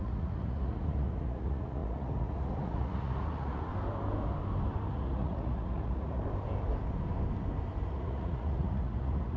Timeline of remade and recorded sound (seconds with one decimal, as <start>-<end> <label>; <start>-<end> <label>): 0.0-3.7 remade; 3.7-4.9 recorded; 4.9-6.2 remade; 6.2-7.9 recorded; 7.9-9.4 remade